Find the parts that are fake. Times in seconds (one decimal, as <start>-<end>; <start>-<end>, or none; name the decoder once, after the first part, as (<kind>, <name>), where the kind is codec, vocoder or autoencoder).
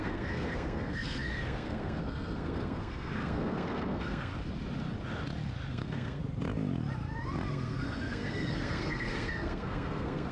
0.0-4.3 (codec, SNAC); 5.7-6.2; 7.5-10.3